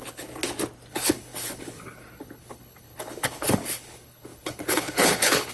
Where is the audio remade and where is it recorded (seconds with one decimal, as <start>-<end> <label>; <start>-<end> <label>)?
0.0-0.4 remade; 0.4-0.9 recorded; 0.9-5.5 remade